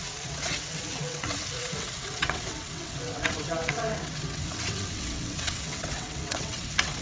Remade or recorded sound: remade